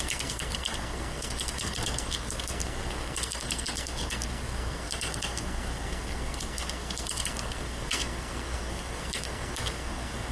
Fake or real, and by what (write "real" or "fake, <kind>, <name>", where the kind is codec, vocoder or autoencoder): fake, codec, SNAC